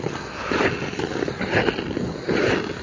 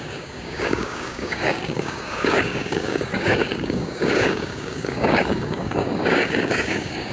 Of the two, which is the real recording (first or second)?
first